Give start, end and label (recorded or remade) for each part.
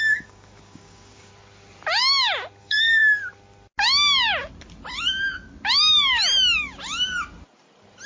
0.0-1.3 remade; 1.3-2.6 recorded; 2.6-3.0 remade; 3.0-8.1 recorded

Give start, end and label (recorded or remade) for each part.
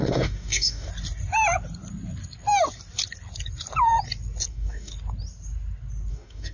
0.0-0.9 remade; 0.9-4.5 recorded; 4.5-4.9 remade; 4.9-6.1 recorded; 6.1-6.5 remade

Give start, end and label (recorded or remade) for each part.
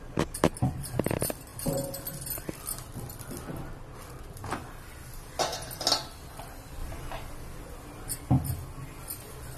0.0-9.6 recorded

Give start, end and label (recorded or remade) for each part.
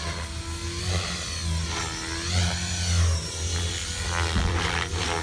0.0-5.2 recorded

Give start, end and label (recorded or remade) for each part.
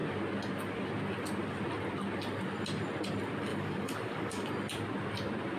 0.0-3.5 recorded; 3.5-4.5 remade; 4.5-5.6 recorded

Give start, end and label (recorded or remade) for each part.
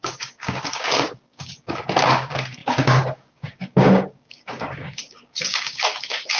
0.0-6.4 remade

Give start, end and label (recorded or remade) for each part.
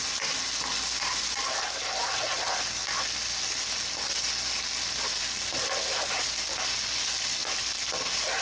0.0-8.4 recorded